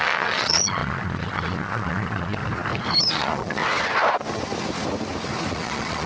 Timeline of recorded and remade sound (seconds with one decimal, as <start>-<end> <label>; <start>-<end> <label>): 0.0-2.4 remade; 2.4-3.1 recorded; 3.1-3.6 remade; 3.6-5.5 recorded; 5.5-6.1 remade